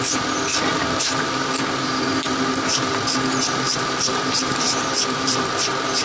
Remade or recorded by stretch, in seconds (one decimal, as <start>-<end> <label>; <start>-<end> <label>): 0.0-0.8 recorded; 0.8-2.7 remade; 2.7-4.1 recorded; 4.1-5.5 remade; 5.5-6.0 recorded